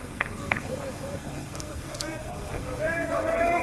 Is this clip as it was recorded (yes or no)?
no